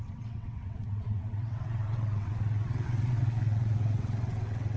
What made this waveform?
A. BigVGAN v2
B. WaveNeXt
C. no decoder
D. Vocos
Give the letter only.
B